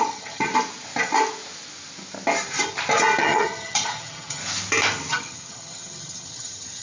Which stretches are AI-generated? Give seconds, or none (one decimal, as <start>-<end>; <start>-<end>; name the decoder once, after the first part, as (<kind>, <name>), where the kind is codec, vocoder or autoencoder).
0.0-0.5 (vocoder, HiFi-GAN); 3.2-4.4; 5.1-6.8